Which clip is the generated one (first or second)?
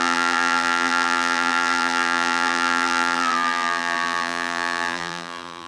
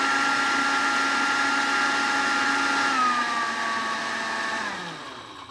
first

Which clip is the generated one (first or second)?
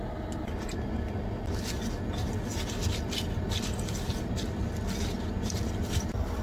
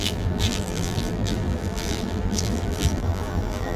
second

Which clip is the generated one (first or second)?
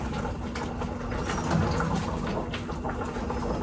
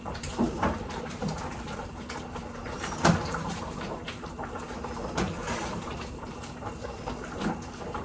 second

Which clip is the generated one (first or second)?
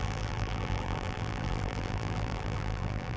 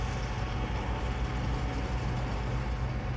first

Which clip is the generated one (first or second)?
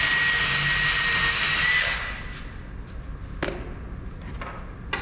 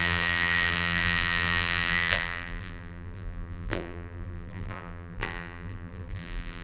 second